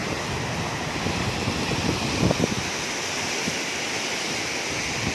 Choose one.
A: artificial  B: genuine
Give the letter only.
B